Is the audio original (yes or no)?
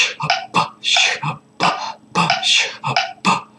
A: yes